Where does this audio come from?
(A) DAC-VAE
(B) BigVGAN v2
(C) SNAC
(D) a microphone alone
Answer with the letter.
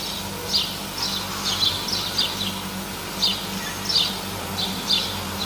D